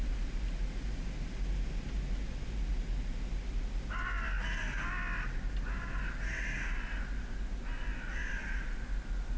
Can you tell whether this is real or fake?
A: real